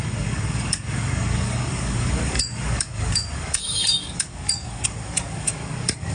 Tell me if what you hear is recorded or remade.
remade